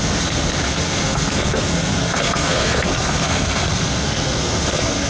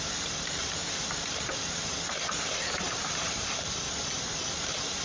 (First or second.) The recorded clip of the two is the second